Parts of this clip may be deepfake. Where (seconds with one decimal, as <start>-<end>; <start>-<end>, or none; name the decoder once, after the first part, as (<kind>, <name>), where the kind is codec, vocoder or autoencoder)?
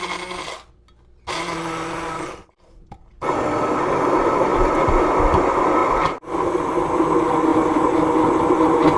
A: 4.5-5.1 (vocoder, BigVGAN v2); 5.8-6.7